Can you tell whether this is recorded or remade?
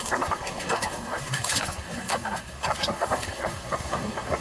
remade